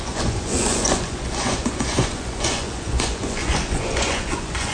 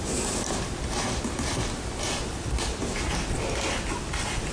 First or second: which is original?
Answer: second